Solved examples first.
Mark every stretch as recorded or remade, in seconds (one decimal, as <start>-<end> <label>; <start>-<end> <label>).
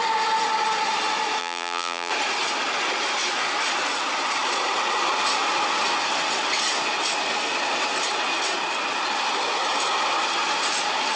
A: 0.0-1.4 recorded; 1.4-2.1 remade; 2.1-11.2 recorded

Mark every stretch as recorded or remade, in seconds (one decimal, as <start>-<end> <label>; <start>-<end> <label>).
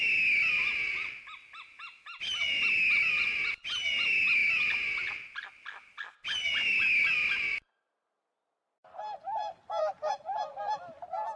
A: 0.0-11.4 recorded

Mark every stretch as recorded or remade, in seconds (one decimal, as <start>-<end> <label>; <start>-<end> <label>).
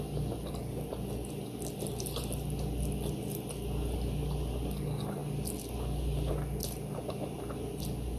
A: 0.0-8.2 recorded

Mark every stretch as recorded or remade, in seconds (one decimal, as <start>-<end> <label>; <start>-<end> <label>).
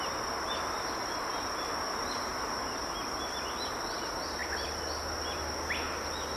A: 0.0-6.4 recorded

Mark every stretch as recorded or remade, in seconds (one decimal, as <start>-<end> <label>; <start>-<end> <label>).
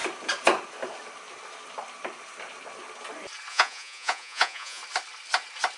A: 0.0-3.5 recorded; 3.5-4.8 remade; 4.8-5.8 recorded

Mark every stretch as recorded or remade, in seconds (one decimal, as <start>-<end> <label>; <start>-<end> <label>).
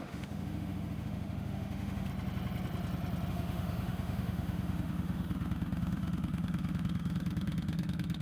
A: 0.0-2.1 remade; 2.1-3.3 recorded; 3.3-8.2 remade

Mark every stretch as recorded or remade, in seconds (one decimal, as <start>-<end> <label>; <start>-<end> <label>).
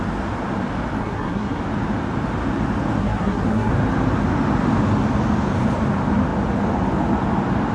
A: 0.0-1.0 recorded; 1.0-1.6 remade; 1.6-3.0 recorded; 3.0-3.7 remade; 3.7-7.7 recorded